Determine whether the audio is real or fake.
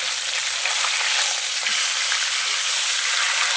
real